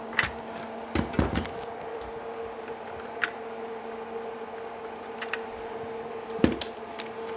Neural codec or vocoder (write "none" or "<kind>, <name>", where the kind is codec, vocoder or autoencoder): none